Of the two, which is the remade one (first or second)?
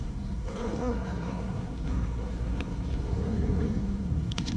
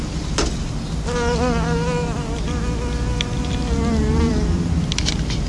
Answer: first